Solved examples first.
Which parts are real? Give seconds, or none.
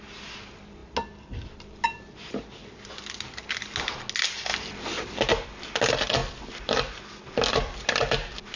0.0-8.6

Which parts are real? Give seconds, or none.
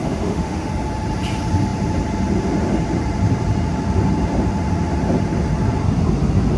0.7-6.6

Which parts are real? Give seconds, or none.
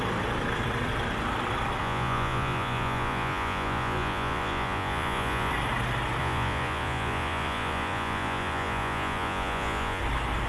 0.0-1.8; 5.5-6.2; 10.0-10.5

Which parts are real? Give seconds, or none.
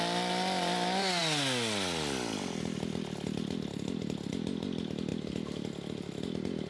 0.0-6.7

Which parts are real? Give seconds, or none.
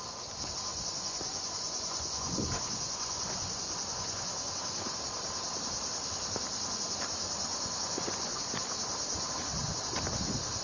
0.0-0.7; 4.5-7.5; 8.4-10.6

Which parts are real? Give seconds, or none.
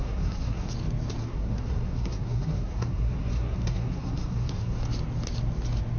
0.7-1.2; 4.8-6.0